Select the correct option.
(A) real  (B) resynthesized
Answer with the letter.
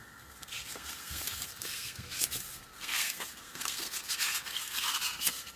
B